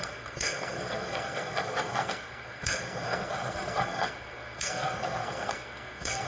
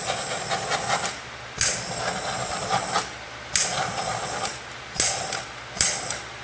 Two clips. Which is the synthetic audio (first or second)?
first